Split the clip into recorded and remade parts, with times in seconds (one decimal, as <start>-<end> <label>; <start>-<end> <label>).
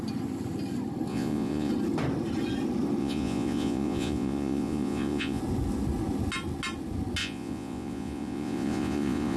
0.0-1.1 recorded; 1.1-1.7 remade; 1.7-3.0 recorded; 3.0-5.4 remade; 5.4-7.2 recorded; 7.2-9.4 remade